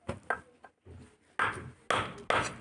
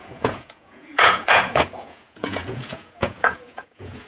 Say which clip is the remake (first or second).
second